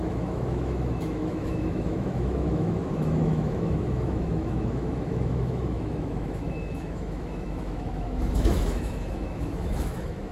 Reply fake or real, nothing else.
fake